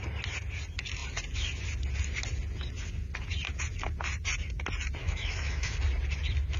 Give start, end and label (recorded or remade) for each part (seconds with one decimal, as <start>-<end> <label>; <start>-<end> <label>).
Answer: 0.0-5.0 recorded; 5.0-5.8 remade; 5.8-6.6 recorded